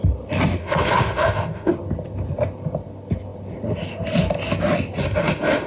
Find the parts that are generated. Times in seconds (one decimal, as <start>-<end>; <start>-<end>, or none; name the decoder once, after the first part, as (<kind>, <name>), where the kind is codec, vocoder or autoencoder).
0.6-1.7 (autoencoder, DAC-VAE); 5.0-5.7